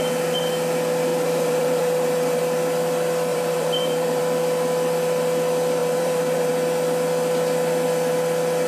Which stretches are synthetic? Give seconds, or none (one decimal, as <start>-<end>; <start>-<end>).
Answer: 1.1-2.4; 3.3-4.2; 5.8-6.5